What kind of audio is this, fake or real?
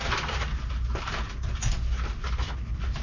real